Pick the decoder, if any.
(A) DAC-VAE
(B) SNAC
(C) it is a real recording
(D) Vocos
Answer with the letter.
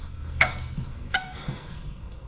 B